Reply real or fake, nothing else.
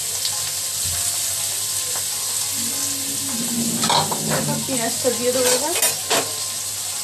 real